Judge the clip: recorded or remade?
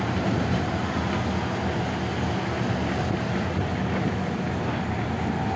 recorded